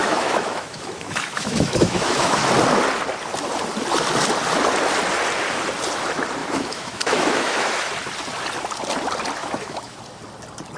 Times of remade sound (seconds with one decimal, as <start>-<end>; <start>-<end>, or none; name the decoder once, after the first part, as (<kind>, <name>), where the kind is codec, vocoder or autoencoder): 0.0-2.4 (autoencoder, DAC-VAE); 6.4-7.9; 9.4-10.0